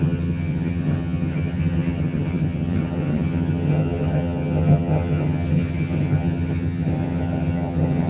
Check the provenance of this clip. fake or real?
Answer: fake